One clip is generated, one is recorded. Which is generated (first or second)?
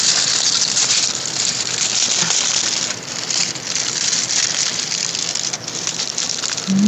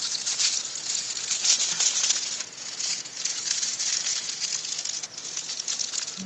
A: second